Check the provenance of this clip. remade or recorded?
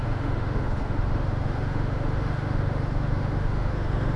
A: remade